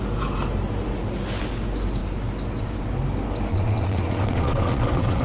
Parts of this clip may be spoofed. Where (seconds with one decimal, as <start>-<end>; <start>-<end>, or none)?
3.5-5.2